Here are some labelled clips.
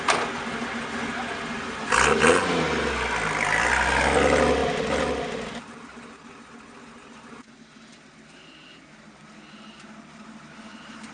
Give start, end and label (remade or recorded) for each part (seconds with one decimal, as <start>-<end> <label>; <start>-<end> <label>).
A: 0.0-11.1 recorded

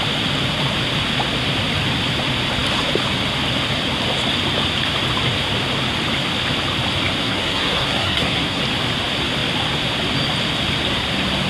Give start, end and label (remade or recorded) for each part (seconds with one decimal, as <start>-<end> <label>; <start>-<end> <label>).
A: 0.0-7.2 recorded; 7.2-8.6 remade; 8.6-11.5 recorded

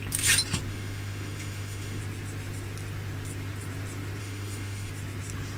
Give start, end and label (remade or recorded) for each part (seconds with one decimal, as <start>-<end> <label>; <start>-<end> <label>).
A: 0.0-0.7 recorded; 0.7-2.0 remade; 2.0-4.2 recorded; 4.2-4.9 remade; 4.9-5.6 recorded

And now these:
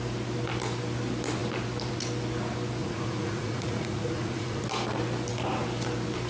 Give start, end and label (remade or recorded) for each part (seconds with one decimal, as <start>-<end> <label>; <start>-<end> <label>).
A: 0.0-2.8 recorded; 2.8-4.6 remade; 4.6-6.3 recorded